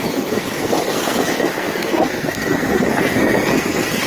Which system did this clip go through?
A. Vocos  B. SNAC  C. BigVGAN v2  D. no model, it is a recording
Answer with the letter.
B